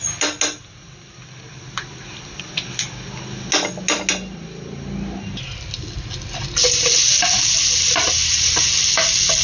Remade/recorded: recorded